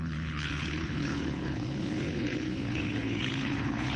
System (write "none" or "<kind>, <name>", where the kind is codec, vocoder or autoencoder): codec, HILCodec